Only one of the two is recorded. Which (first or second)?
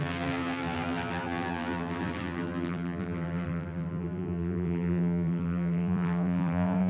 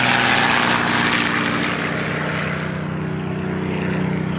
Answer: second